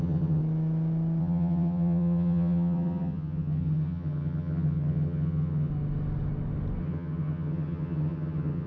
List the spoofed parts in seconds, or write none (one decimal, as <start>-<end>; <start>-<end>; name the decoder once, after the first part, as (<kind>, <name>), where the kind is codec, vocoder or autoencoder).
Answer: 0.0-0.4 (vocoder, HiFi-GAN); 1.2-5.7; 6.8-8.7

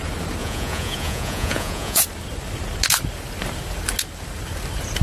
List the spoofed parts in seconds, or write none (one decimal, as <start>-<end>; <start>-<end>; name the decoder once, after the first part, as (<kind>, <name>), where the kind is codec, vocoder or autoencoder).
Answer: 0.4-2.0 (vocoder, Vocos)

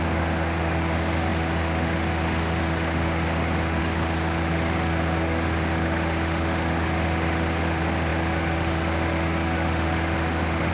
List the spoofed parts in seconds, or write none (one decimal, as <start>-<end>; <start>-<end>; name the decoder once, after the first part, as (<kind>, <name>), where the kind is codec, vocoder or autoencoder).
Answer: 0.0-10.7 (autoencoder, DAC-VAE)

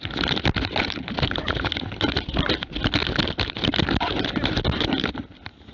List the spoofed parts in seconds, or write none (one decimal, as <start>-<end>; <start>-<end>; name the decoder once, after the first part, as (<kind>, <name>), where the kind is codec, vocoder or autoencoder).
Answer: none

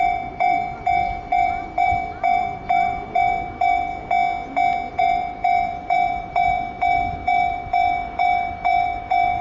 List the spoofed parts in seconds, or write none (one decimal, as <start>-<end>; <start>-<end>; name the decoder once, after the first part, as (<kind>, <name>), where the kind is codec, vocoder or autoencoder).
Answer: 0.0-3.9 (vocoder, BigVGAN v2); 4.9-9.4

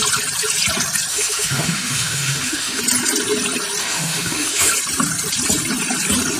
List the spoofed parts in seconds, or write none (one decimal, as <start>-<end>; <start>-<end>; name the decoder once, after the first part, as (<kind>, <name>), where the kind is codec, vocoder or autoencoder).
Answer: 1.1-2.8 (autoencoder, DAC-VAE); 3.8-4.7

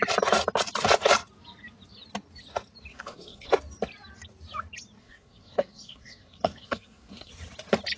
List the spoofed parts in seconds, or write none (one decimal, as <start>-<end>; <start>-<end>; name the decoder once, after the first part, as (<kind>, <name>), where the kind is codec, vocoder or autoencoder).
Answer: 2.9-3.5 (codec, SNAC); 5.0-7.3

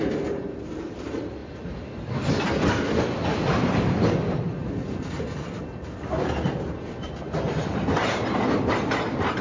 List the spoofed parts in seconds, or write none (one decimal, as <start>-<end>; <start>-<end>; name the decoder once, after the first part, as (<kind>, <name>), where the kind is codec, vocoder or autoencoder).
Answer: none